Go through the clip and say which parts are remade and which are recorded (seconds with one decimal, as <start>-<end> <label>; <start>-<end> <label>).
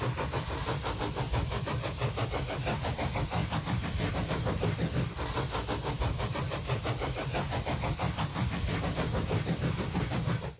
0.0-4.8 remade; 4.8-5.9 recorded; 5.9-10.6 remade